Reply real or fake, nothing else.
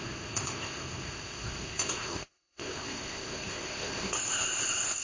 fake